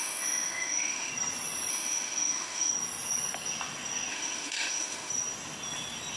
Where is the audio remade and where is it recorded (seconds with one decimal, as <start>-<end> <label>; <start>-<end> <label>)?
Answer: 0.0-1.1 remade; 1.1-1.7 recorded; 1.7-2.7 remade; 2.7-4.1 recorded; 4.1-5.1 remade; 5.1-6.2 recorded